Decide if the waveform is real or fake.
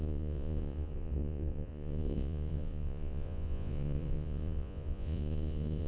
fake